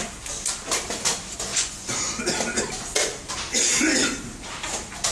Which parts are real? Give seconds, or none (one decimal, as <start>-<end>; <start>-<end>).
0.0-1.5; 2.2-5.1